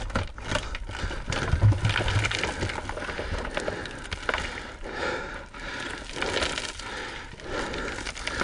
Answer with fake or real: real